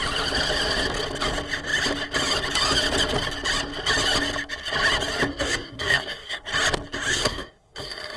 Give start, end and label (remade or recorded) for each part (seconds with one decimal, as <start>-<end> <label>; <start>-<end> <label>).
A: 0.0-5.3 recorded; 5.3-6.4 remade; 6.4-7.1 recorded; 7.1-8.2 remade